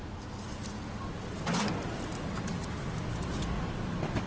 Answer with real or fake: real